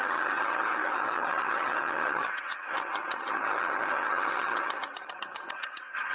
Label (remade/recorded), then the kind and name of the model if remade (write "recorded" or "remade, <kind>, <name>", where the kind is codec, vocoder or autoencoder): remade, vocoder, HiFi-GAN